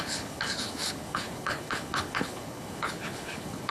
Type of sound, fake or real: fake